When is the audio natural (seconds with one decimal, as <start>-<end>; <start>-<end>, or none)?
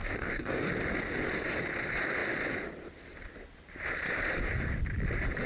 0.7-5.5